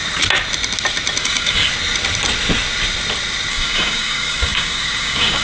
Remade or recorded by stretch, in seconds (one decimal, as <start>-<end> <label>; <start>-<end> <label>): 0.0-1.2 recorded; 1.2-1.7 remade; 1.7-3.5 recorded; 3.5-5.4 remade